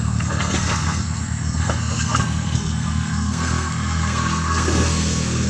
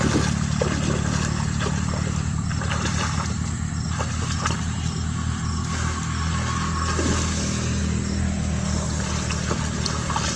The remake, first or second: first